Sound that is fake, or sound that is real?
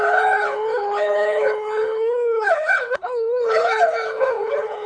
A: fake